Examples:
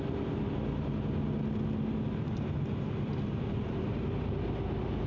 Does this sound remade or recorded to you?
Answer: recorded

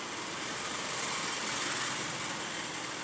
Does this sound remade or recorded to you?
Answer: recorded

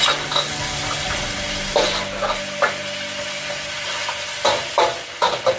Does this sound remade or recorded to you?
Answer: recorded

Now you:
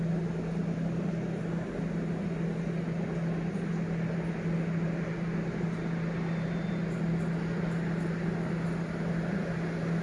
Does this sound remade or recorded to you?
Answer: recorded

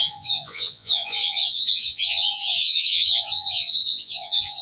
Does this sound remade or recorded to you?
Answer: remade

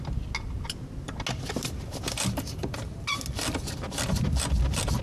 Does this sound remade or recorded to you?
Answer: recorded